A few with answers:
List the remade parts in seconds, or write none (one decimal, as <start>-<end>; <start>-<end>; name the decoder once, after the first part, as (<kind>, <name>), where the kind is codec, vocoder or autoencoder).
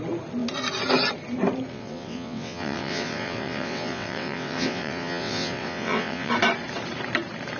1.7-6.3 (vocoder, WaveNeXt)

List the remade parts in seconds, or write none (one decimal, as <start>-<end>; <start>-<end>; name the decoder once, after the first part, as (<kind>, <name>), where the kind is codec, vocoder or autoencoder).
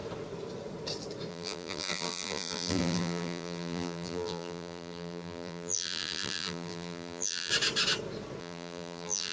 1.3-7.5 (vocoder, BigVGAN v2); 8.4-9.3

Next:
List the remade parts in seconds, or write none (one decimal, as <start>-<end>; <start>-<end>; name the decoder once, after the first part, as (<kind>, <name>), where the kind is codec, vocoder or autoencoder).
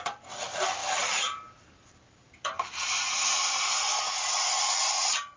0.8-4.0 (vocoder, BigVGAN v2)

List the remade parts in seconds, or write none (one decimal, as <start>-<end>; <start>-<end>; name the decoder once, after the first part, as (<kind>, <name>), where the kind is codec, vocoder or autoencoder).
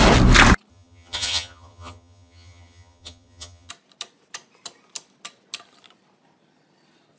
0.7-3.7 (vocoder, HiFi-GAN)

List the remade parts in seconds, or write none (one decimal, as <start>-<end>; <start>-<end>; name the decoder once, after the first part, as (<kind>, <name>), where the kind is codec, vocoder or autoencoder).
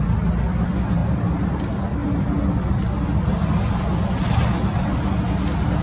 1.0-1.6 (vocoder, BigVGAN v2)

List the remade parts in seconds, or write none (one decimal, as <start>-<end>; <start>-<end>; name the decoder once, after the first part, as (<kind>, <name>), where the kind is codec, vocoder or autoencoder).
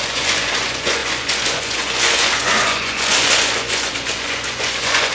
0.0-5.1 (vocoder, Vocos)